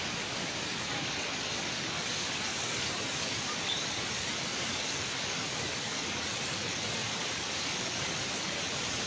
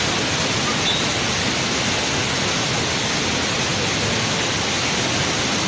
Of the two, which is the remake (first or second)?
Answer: first